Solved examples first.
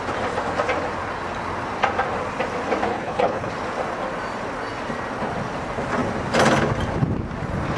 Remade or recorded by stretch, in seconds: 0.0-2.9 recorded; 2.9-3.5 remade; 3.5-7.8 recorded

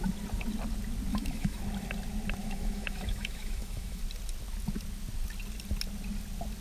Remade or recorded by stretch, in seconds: 0.0-1.1 recorded; 1.1-1.6 remade; 1.6-2.4 recorded; 2.4-4.0 remade; 4.0-6.6 recorded